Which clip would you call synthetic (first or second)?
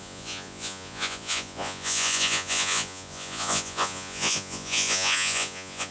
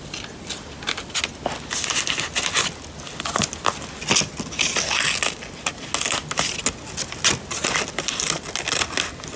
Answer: first